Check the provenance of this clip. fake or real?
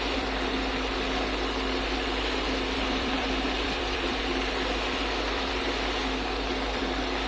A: fake